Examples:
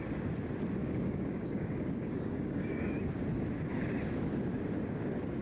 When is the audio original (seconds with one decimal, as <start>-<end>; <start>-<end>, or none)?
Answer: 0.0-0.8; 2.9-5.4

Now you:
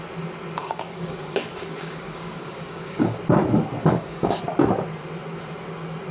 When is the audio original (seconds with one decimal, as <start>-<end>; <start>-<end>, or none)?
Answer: 0.0-0.6; 3.2-3.8; 4.4-6.1

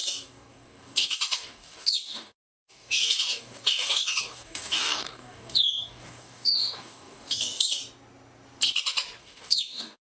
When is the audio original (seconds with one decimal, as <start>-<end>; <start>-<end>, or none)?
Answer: 7.8-9.2

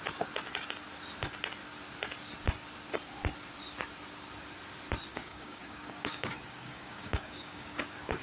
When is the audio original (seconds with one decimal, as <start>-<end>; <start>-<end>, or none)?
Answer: 0.0-5.1